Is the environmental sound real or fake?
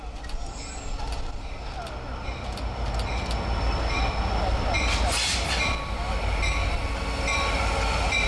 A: real